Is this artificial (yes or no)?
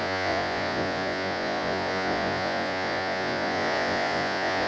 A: yes